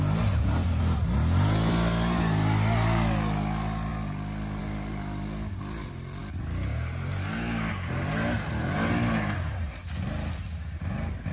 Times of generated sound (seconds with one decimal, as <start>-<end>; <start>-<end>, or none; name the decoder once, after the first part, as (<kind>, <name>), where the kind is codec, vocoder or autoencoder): none